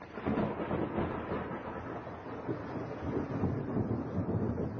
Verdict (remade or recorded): recorded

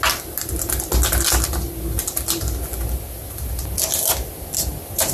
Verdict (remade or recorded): recorded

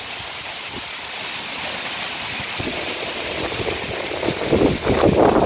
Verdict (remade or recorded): recorded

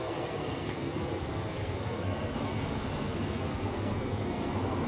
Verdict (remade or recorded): remade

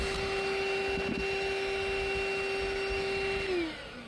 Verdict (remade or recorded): recorded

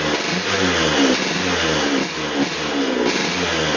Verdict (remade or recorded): recorded